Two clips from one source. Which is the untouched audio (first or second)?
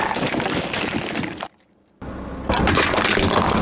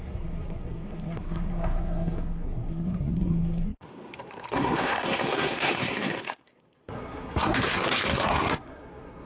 first